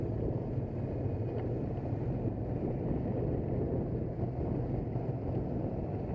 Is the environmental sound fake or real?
real